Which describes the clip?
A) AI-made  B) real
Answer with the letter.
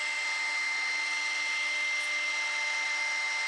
B